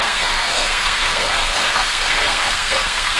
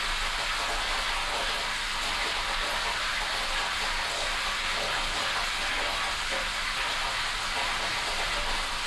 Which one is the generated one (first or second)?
first